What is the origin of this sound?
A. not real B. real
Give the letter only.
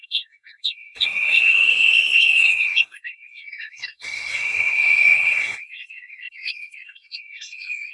A